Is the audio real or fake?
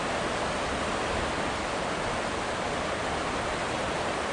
real